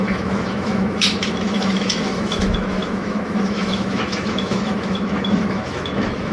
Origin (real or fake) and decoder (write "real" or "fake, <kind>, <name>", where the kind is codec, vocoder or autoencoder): fake, autoencoder, DAC-VAE